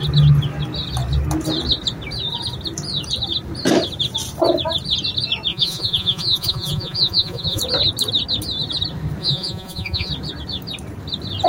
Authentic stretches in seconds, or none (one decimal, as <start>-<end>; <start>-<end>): 0.0-5.5; 7.6-9.2; 10.1-11.5